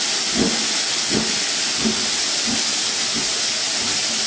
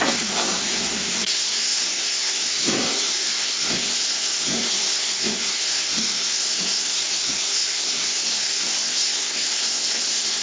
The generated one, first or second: second